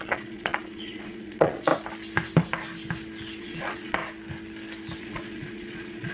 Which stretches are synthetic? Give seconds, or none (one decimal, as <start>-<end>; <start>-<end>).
0.0-1.7; 3.4-4.0; 5.0-6.1